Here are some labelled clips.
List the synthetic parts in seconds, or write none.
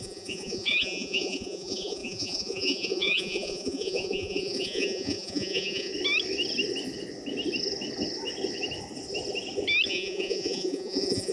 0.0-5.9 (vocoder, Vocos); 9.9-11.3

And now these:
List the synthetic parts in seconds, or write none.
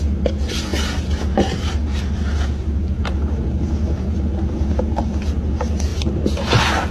none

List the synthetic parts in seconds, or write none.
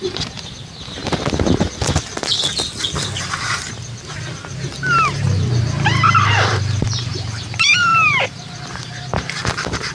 0.0-1.0 (vocoder, BigVGAN v2); 6.3-9.9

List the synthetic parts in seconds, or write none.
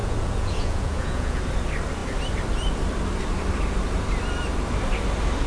0.0-1.4 (vocoder, Vocos)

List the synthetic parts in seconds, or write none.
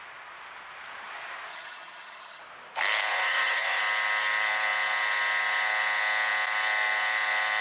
1.5-2.4 (vocoder, HiFi-GAN); 3.1-3.8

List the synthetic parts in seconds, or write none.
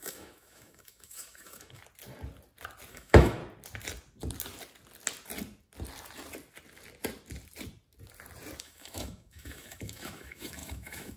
0.0-1.8 (autoencoder, DAC-VAE); 2.9-3.4; 8.6-11.2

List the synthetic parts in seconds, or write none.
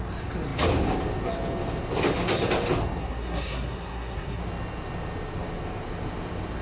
3.0-4.4 (codec, SNAC)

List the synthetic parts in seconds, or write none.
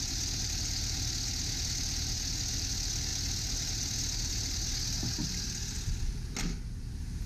none